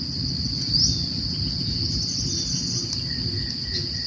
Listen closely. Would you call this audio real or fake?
real